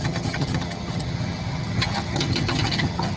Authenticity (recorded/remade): remade